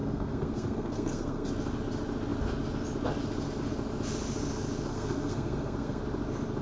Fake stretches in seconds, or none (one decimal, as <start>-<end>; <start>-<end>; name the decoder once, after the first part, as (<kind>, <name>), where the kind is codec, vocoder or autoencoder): 0.0-1.5 (codec, SNAC); 4.9-6.0